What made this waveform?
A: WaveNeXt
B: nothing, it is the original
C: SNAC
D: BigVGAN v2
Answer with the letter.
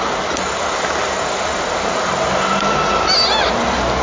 B